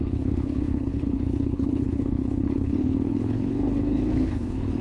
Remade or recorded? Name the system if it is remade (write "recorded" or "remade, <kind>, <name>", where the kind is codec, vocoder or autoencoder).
remade, codec, HILCodec